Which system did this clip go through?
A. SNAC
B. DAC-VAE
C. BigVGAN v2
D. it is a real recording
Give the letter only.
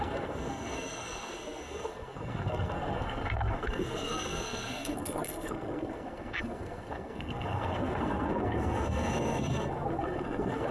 A